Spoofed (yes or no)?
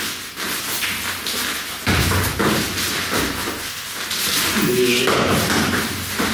no